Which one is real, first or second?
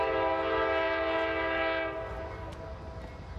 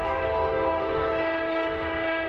first